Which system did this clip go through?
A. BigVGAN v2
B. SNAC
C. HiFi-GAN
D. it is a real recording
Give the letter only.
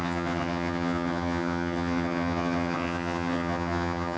C